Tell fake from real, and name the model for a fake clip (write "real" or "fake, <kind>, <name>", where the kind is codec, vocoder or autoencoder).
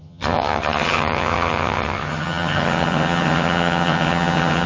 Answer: fake, vocoder, HiFi-GAN